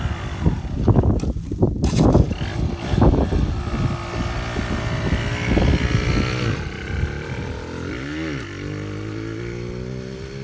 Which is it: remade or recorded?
recorded